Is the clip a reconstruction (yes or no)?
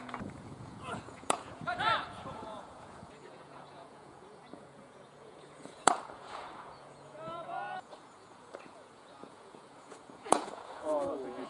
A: yes